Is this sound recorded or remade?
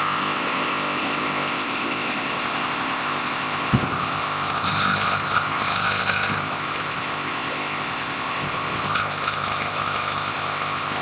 remade